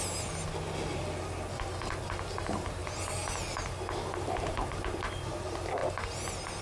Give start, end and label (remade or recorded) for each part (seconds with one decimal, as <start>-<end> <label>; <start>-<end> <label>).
0.0-6.6 recorded

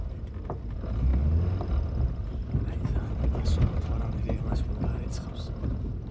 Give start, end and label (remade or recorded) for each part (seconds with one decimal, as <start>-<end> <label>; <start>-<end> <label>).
0.0-6.1 recorded

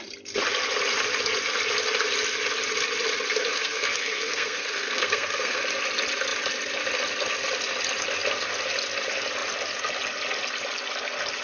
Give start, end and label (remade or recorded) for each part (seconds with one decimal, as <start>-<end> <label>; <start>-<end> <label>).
0.0-3.5 recorded; 3.5-5.6 remade; 5.6-11.4 recorded

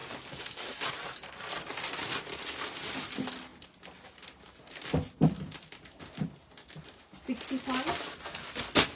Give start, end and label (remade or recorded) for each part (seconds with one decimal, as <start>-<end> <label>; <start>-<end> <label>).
0.0-9.0 recorded